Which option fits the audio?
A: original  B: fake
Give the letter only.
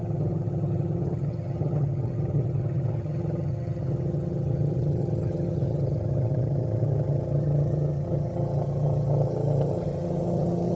B